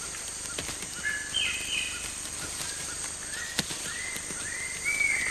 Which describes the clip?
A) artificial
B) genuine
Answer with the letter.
B